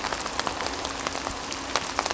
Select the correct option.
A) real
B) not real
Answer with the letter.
A